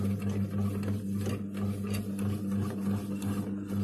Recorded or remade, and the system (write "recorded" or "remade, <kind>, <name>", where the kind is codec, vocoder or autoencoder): recorded